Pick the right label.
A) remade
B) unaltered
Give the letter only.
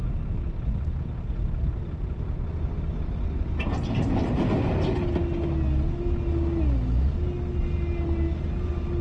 B